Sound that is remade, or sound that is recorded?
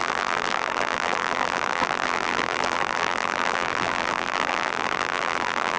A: remade